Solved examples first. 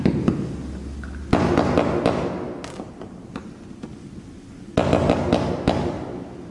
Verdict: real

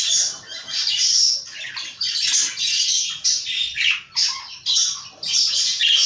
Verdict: fake